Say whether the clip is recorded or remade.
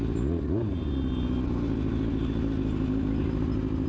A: recorded